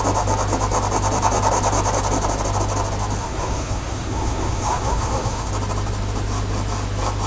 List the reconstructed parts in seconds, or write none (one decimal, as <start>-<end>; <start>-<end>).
3.2-5.5